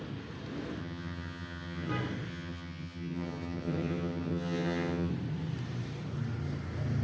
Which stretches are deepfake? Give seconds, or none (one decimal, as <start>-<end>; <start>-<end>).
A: 0.8-1.9; 2.3-5.1

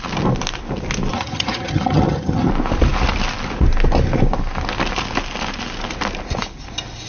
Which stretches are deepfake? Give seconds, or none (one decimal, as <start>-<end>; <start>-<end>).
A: 1.1-2.5